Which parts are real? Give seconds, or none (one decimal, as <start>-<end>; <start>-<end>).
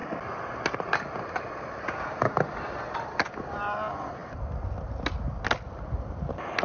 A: 0.0-6.6